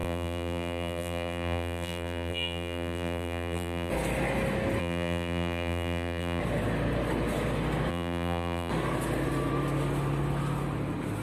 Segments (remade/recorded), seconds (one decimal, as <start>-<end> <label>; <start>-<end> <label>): 0.0-3.9 remade; 3.9-4.8 recorded; 4.8-6.4 remade; 6.4-7.9 recorded; 7.9-8.7 remade; 8.7-11.2 recorded